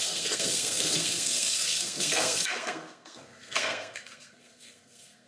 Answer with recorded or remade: remade